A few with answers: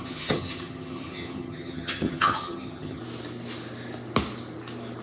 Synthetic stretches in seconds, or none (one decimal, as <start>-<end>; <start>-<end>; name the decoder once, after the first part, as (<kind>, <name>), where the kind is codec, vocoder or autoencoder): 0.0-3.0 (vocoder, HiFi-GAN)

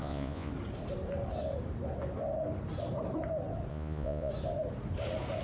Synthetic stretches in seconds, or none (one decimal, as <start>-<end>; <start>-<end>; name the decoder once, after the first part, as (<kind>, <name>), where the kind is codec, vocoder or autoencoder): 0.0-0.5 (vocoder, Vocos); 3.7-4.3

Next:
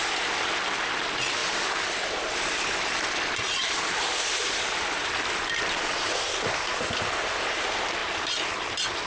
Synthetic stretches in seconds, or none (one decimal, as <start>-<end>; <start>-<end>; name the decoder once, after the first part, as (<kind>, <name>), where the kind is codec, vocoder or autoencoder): none